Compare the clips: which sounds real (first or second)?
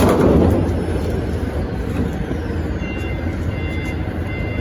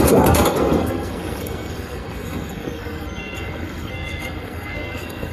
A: first